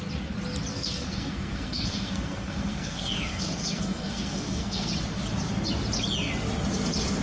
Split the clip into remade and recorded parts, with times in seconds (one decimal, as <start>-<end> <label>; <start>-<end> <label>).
0.0-0.7 recorded; 0.7-4.9 remade; 4.9-7.2 recorded